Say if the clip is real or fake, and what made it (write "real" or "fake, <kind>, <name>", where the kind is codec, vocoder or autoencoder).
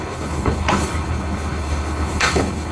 fake, codec, HILCodec